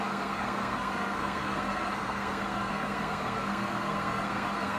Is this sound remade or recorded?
remade